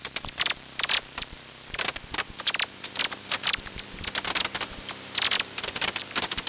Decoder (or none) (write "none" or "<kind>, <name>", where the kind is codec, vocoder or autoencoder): vocoder, BigVGAN v2